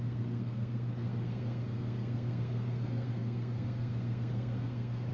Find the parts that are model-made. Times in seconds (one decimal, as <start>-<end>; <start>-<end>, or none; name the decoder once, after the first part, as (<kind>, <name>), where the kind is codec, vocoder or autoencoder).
0.0-5.1 (codec, SNAC)